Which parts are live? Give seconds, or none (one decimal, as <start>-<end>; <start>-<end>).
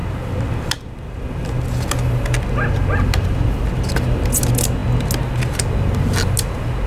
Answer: 0.0-6.9